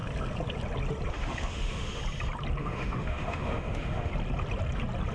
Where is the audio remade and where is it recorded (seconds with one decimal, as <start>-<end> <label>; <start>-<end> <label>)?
0.0-1.1 recorded; 1.1-2.0 remade; 2.0-2.6 recorded; 2.6-4.1 remade; 4.1-5.1 recorded